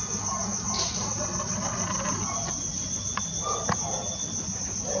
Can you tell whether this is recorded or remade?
recorded